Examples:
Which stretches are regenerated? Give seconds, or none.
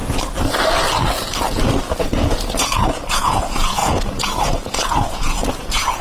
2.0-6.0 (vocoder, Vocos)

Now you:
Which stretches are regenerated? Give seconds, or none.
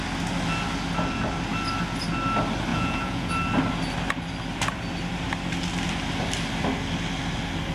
2.7-3.3 (vocoder, Vocos)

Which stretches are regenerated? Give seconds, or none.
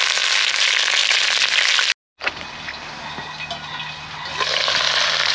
none